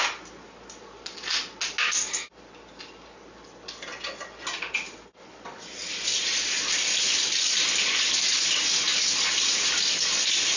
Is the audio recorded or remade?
recorded